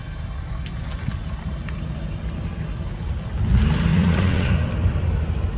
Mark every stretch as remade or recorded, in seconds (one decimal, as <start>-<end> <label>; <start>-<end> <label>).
0.0-3.9 recorded; 3.9-4.5 remade; 4.5-5.6 recorded